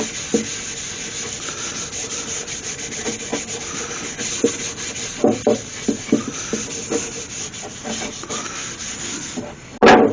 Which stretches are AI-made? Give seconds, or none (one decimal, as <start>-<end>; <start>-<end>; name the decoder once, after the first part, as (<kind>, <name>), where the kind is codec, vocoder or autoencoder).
none